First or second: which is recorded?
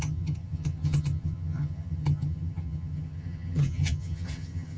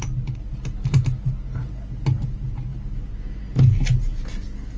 second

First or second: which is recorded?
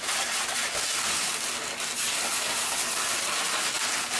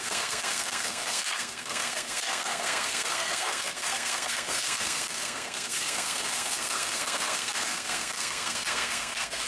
first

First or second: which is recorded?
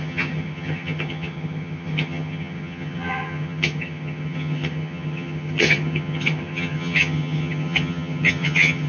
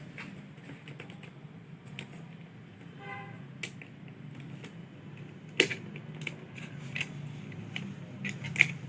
second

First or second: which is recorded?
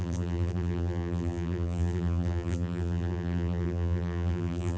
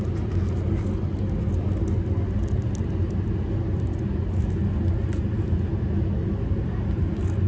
second